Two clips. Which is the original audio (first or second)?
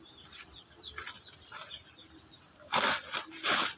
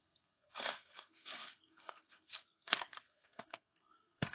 first